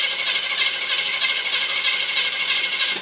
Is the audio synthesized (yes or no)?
no